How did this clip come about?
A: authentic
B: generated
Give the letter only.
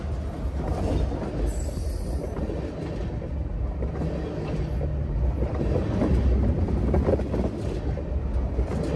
A